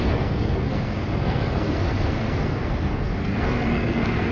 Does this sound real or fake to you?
fake